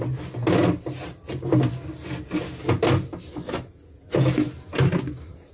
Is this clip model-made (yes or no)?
no